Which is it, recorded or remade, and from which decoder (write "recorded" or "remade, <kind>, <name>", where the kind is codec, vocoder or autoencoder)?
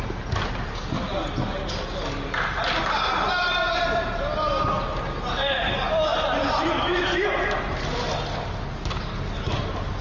recorded